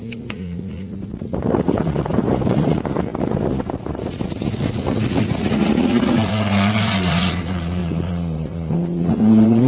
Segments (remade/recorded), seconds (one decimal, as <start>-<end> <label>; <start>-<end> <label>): 0.0-9.7 remade